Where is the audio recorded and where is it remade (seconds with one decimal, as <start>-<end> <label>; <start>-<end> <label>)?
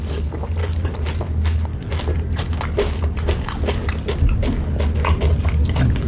0.0-0.6 remade; 0.6-1.2 recorded; 1.2-1.7 remade; 1.7-5.4 recorded; 5.4-6.1 remade